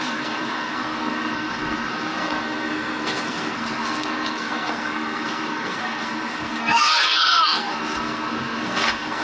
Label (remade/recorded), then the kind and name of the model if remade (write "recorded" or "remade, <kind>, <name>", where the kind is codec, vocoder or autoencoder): remade, codec, SNAC